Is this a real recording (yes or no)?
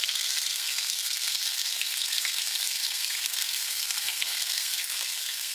no